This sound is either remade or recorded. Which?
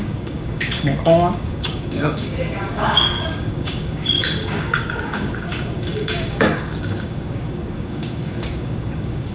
remade